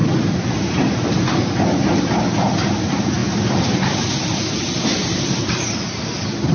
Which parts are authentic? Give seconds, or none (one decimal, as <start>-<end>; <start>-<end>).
0.0-6.5